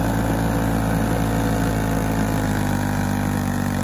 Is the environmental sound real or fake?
real